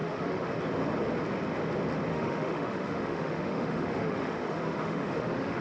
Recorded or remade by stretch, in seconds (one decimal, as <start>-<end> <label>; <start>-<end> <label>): 0.0-0.5 remade; 0.5-2.1 recorded; 2.1-5.6 remade